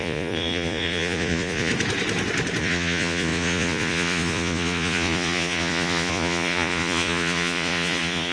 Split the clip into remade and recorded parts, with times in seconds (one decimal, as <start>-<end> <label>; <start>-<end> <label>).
0.0-1.7 remade; 1.7-2.6 recorded; 2.6-8.3 remade